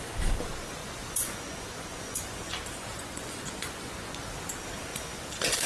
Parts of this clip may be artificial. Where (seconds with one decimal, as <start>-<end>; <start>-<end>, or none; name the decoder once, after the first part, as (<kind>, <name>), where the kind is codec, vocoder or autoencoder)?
0.8-4.2 (vocoder, Vocos); 4.9-5.7